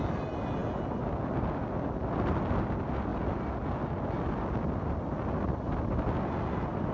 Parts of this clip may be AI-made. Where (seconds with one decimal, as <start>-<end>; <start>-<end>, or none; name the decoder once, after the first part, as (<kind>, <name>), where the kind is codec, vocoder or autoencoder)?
none

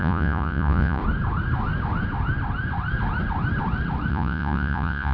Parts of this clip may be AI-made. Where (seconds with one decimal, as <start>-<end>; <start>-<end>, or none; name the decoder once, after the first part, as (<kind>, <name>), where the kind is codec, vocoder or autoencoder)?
0.0-1.0 (vocoder, Vocos); 4.1-5.1

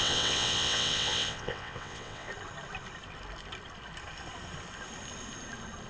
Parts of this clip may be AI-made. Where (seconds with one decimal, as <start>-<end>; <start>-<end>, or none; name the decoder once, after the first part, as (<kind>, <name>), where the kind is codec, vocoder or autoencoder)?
0.0-2.3 (vocoder, WaveNeXt)

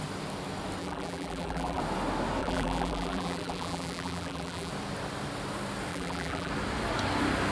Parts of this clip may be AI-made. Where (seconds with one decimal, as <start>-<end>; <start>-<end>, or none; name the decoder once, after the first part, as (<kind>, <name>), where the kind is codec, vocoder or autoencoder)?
0.8-1.8 (vocoder, BigVGAN v2); 2.4-4.7; 5.9-6.5

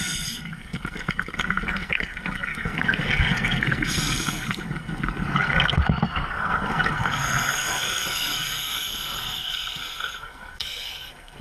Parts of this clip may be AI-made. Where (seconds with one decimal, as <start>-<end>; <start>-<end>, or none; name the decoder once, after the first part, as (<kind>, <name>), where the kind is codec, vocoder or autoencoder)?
0.0-11.4 (codec, SNAC)

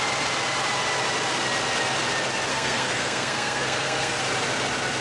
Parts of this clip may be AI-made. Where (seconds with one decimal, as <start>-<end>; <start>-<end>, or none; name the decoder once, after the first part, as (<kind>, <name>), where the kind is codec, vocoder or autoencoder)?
2.5-4.2 (codec, SNAC)